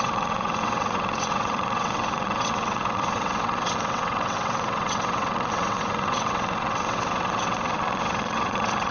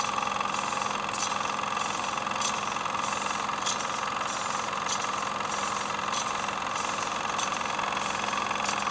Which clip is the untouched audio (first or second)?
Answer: second